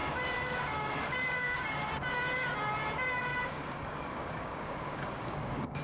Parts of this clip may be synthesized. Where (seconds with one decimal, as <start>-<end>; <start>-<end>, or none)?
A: 0.0-1.9; 3.3-5.8